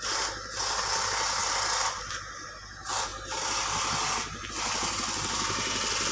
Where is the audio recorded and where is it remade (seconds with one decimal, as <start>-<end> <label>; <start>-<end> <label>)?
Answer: 0.0-6.1 recorded